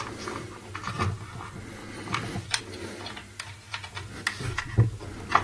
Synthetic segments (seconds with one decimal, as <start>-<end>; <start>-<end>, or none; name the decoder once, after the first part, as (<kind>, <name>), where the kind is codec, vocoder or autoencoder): none